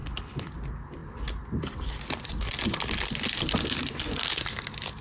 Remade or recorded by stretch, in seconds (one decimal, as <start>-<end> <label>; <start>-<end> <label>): 0.0-0.5 remade; 0.5-5.0 recorded